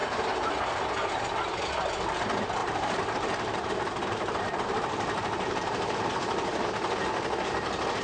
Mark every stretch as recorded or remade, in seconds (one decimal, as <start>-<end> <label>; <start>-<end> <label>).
0.0-0.5 remade; 0.5-2.6 recorded; 2.6-6.7 remade; 6.7-8.0 recorded